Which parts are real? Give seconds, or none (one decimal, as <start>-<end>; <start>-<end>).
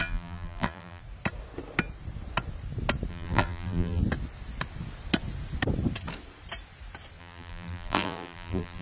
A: 1.0-3.1; 4.0-7.2